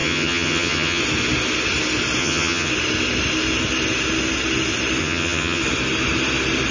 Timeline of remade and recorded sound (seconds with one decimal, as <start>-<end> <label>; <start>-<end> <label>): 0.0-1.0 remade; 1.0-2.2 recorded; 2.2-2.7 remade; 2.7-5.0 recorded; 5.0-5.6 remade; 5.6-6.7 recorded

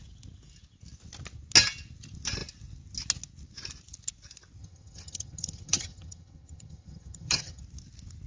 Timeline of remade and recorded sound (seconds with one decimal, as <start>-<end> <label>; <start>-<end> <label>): 0.0-4.6 recorded; 4.6-7.6 remade; 7.6-8.3 recorded

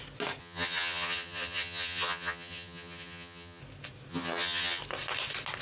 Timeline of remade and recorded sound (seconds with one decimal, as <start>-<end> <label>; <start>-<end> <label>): 0.0-0.4 recorded; 0.4-3.6 remade; 3.6-4.1 recorded; 4.1-4.8 remade; 4.8-5.6 recorded

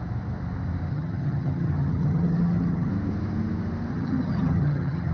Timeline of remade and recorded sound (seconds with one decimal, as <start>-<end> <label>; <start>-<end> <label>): 0.0-0.9 recorded; 0.9-2.9 remade; 2.9-3.9 recorded; 3.9-5.1 remade

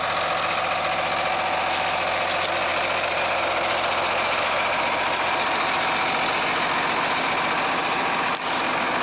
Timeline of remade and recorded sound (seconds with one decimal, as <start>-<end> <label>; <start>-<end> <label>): 0.0-9.0 recorded